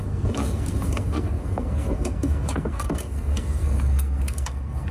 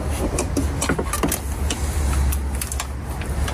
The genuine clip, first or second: second